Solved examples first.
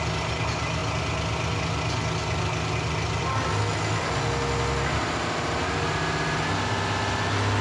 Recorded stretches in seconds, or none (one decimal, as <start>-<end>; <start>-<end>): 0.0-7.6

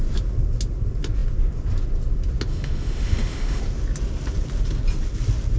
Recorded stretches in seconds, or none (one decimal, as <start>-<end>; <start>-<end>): 0.0-2.5; 3.6-5.6

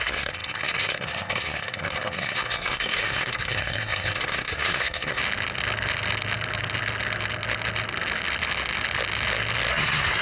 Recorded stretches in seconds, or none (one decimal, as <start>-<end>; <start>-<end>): 5.2-9.7

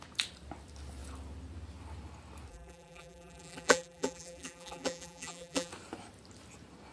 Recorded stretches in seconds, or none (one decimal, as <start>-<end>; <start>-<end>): 0.0-2.5; 5.7-6.9

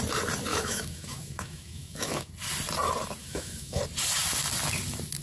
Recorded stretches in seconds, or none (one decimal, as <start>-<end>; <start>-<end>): 0.0-0.5; 2.3-3.2; 3.8-5.2

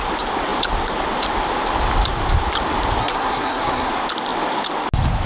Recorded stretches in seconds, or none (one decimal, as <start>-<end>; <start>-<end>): 0.0-3.0; 3.9-5.3

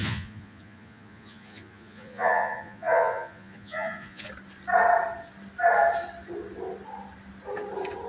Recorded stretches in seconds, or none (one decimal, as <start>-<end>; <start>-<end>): 4.3-8.1

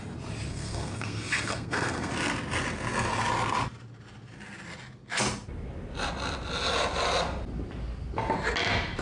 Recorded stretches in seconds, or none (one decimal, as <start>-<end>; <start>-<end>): 0.0-0.5; 2.1-9.0